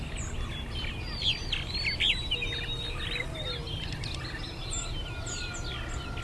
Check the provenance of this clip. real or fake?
real